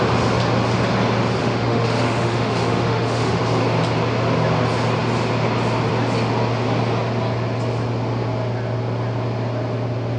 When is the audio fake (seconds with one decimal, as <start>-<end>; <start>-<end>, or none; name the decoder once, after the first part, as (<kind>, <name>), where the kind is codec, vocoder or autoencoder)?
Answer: 1.4-3.4 (autoencoder, DAC-VAE)